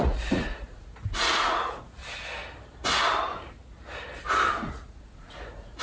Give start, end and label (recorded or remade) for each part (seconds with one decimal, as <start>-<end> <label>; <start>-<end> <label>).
0.0-2.0 remade; 2.0-4.7 recorded; 4.7-5.8 remade